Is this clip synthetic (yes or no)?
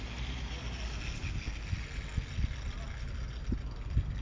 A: no